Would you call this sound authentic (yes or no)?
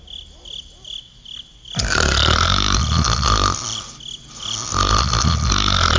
yes